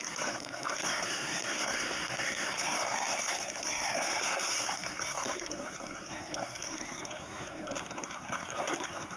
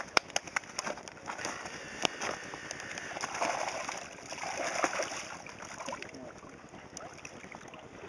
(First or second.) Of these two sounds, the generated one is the first